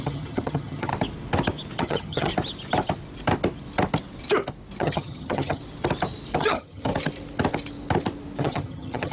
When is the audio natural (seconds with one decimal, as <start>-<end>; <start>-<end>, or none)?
0.9-1.8; 2.3-4.8; 5.6-6.4; 6.9-8.4